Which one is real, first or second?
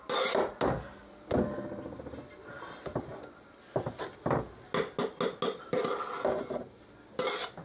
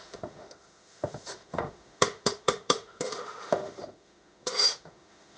first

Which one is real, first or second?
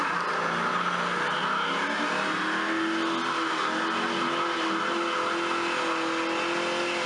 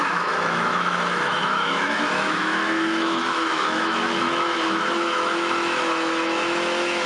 first